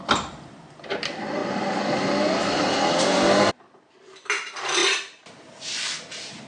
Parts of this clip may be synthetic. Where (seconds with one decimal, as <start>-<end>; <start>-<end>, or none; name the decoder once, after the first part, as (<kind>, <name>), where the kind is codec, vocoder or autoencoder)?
0.0-1.4 (vocoder, BigVGAN v2); 3.5-4.8; 5.3-6.5